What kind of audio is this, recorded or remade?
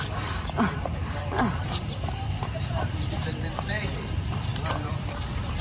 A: remade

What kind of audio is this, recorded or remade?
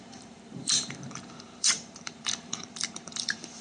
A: remade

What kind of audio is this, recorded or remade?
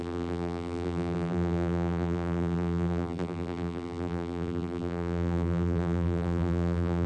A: remade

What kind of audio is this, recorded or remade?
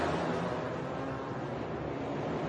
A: recorded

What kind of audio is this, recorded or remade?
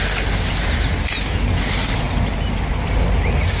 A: recorded